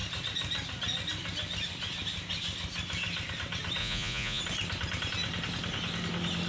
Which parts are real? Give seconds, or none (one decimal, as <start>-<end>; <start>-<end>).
0.0-3.8; 4.4-6.5